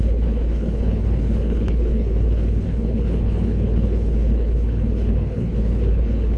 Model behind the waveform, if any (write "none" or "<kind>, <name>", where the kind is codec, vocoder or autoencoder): codec, HILCodec